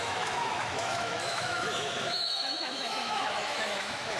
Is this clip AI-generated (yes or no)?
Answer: yes